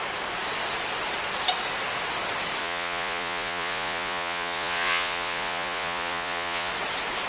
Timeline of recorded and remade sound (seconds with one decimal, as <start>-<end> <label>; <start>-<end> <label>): 0.0-2.6 recorded; 2.6-6.7 remade; 6.7-7.3 recorded